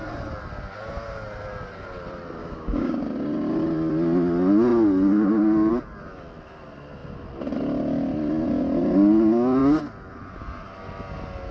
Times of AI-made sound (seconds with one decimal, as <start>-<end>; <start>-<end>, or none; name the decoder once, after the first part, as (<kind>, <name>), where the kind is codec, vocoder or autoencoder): 2.4-3.0 (codec, DAC)